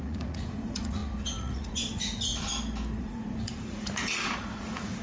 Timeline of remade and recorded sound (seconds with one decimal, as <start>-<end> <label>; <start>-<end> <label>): 0.0-2.5 remade; 2.5-3.0 recorded; 3.0-5.0 remade